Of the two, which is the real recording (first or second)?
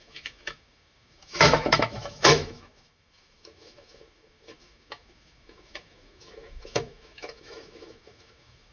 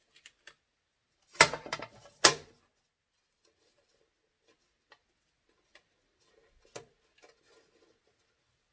second